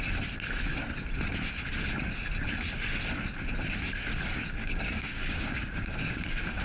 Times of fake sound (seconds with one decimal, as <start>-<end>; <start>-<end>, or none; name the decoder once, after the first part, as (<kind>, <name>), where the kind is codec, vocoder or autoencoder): 4.6-6.6 (codec, DAC)